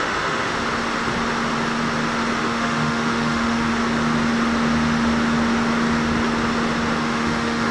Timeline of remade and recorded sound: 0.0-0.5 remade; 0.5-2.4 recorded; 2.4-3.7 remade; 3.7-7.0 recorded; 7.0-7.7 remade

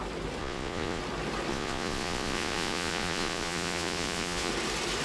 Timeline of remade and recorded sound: 0.0-0.4 recorded; 0.4-1.0 remade; 1.0-1.5 recorded; 1.5-4.5 remade; 4.5-5.0 recorded

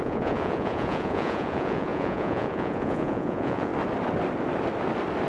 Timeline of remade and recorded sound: 0.0-3.7 remade; 3.7-5.3 recorded

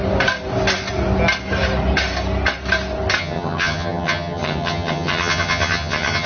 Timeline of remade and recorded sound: 0.0-3.2 recorded; 3.2-6.3 remade

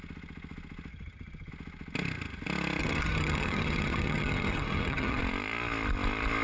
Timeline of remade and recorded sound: 0.0-0.9 recorded; 0.9-1.5 remade; 1.5-2.8 recorded; 2.8-5.2 remade; 5.2-6.4 recorded

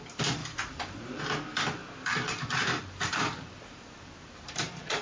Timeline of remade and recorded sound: 0.0-0.4 recorded; 0.4-1.2 remade; 1.2-1.8 recorded; 1.8-5.0 remade

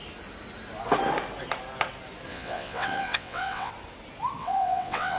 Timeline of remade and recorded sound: 0.0-2.3 recorded; 2.3-3.7 remade; 3.7-4.4 recorded; 4.4-5.2 remade